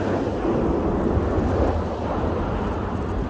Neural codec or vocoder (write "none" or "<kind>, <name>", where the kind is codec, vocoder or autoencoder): none